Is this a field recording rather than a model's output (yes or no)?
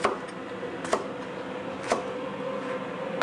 yes